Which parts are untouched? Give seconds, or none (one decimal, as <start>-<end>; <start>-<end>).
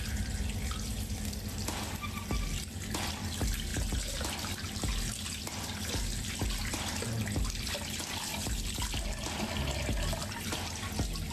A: 0.0-11.3